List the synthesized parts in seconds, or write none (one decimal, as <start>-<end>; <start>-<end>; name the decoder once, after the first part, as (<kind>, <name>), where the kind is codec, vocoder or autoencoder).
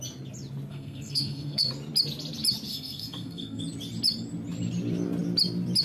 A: 0.7-1.7 (codec, SNAC); 2.7-3.6